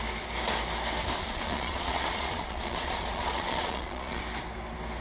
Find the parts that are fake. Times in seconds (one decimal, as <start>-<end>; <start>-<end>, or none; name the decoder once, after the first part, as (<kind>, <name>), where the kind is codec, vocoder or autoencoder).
1.2-4.2 (vocoder, Vocos)